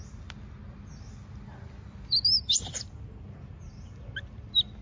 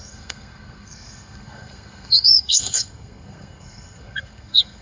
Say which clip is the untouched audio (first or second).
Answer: first